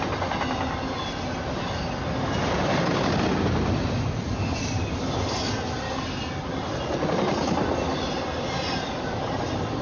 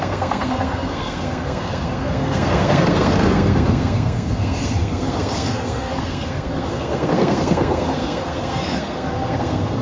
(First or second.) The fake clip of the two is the second